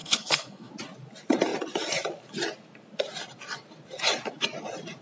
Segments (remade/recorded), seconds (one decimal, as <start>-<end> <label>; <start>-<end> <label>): 0.0-0.7 remade; 0.7-5.0 recorded